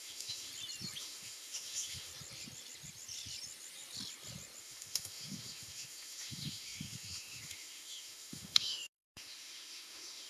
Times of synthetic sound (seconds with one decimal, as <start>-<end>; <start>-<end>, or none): 0.0-0.5; 1.0-2.1; 4.6-10.3